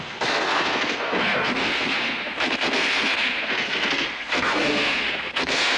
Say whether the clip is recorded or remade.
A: remade